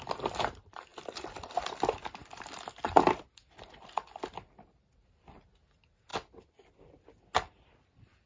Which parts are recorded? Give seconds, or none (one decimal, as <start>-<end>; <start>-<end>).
0.0-8.3